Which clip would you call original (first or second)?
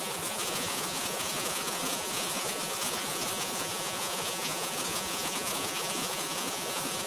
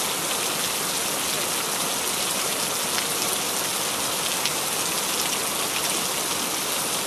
second